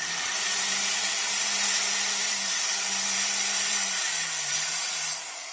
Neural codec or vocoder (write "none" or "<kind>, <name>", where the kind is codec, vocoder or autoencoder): vocoder, BigVGAN v2